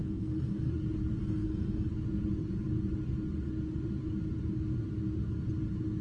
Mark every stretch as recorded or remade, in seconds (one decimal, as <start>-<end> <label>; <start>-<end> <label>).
0.0-0.7 remade; 0.7-1.2 recorded; 1.2-1.9 remade; 1.9-6.0 recorded